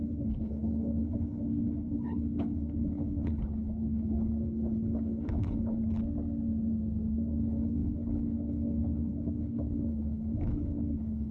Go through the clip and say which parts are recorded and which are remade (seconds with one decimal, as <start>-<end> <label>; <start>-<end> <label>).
0.0-5.8 remade; 5.8-7.1 recorded; 7.1-11.3 remade